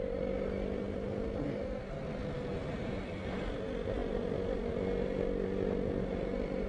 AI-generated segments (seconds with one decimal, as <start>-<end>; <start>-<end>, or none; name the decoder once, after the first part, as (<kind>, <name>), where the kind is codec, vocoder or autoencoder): none